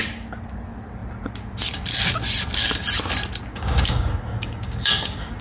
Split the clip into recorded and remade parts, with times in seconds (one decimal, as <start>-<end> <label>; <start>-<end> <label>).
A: 0.0-3.5 recorded; 3.5-5.4 remade